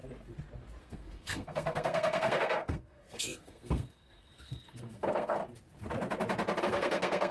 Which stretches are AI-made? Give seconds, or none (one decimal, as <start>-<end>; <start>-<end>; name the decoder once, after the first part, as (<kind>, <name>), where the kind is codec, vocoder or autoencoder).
0.8-5.4 (codec, SNAC); 6.6-7.3